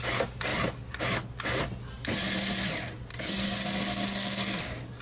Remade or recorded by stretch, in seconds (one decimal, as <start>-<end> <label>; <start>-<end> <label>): 0.0-3.1 recorded; 3.1-4.6 remade; 4.6-5.0 recorded